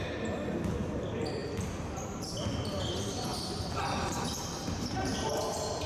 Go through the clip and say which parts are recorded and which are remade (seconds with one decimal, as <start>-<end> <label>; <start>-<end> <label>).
0.0-1.4 recorded; 1.4-2.8 remade; 2.8-3.3 recorded; 3.3-5.9 remade